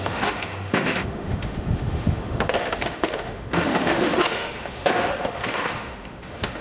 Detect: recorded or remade remade